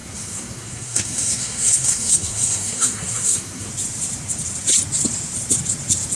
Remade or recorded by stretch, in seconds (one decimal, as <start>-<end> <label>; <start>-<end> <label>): 0.0-3.7 remade; 3.7-6.2 recorded